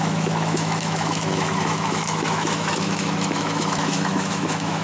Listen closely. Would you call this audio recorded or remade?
remade